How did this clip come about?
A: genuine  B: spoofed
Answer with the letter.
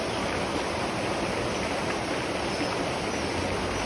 A